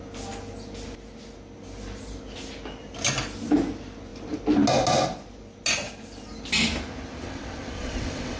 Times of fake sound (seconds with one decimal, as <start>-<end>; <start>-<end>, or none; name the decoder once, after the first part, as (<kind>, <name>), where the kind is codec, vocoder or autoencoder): 7.2-8.4 (vocoder, WaveNeXt)

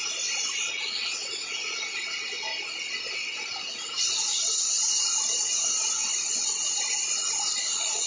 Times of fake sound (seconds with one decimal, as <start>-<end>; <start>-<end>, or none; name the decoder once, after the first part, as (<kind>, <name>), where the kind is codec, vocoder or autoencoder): 0.6-2.5 (vocoder, WaveNeXt); 3.1-4.3; 7.6-8.1

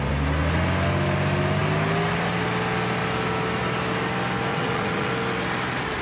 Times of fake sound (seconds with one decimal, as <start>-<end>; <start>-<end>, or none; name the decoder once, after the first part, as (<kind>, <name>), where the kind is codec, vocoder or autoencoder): 4.5-5.1 (vocoder, WaveNeXt)

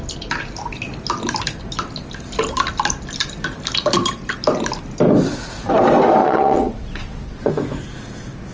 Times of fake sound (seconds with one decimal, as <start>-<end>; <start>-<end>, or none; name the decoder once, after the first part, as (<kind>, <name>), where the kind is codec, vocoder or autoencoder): 6.2-7.5 (vocoder, WaveNeXt)

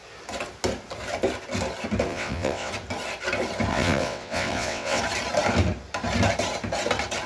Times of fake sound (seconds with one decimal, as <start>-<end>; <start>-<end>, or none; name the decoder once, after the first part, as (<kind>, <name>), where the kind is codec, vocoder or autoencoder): 2.1-2.7 (vocoder, WaveNeXt); 3.7-5.0